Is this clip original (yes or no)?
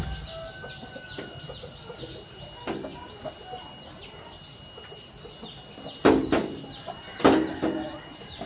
yes